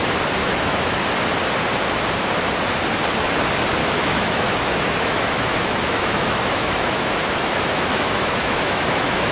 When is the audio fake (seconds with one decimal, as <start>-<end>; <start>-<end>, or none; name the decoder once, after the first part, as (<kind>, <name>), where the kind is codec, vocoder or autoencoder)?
0.4-1.0 (autoencoder, DAC-VAE); 3.8-9.3

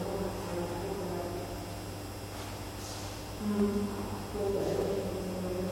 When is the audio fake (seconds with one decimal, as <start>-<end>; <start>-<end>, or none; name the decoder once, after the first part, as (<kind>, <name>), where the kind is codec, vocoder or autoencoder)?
4.3-5.1 (autoencoder, DAC-VAE)

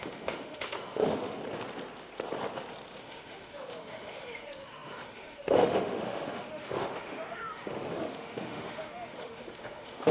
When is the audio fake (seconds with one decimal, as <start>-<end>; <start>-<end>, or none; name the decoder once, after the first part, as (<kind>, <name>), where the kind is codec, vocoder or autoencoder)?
0.0-1.4 (autoencoder, DAC-VAE); 3.0-10.1

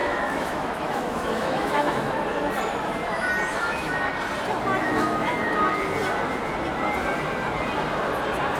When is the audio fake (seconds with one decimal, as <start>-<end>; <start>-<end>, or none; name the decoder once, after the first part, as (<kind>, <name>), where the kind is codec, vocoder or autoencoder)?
0.0-2.1 (autoencoder, DAC-VAE); 3.5-4.1; 4.8-5.4